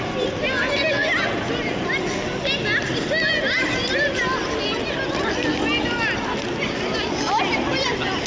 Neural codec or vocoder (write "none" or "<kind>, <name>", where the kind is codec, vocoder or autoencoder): none